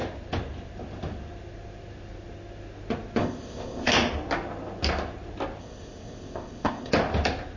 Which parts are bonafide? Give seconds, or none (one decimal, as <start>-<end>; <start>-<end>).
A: 0.0-3.2; 3.9-5.6; 6.9-7.6